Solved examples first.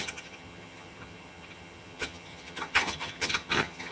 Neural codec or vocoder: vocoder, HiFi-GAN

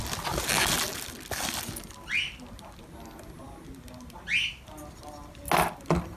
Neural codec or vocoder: none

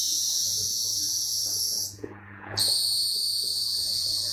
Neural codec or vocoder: vocoder, Vocos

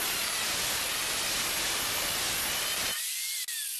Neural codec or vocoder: none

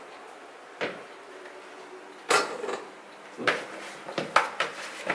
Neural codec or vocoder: none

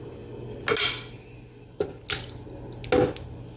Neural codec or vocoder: none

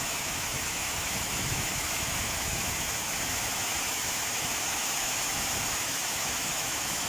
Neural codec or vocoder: autoencoder, DAC-VAE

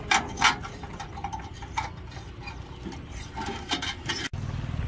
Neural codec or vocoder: none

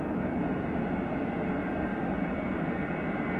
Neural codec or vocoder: none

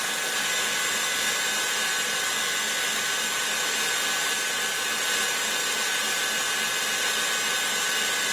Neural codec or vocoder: none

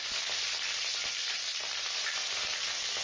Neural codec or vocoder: none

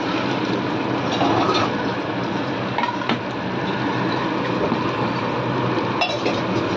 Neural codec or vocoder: none